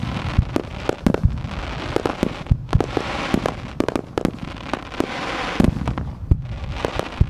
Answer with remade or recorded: recorded